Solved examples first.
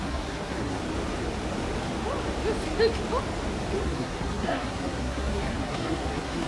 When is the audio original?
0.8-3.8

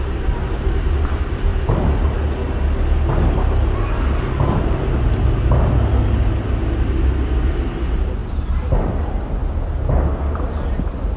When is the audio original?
1.5-3.2; 3.6-7.4; 9.4-10.3